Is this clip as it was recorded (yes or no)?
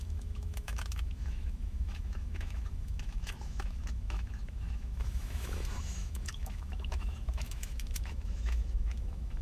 no